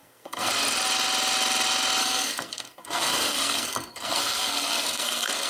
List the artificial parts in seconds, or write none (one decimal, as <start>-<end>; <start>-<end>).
0.0-0.5; 2.0-5.5